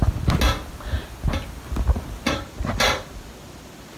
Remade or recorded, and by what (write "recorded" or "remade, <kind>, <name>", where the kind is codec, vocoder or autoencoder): recorded